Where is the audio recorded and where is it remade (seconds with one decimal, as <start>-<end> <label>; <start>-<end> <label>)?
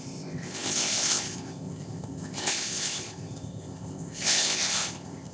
0.0-5.3 remade